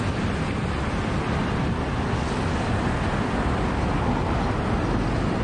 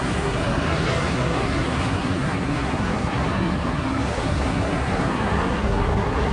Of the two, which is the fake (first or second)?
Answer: second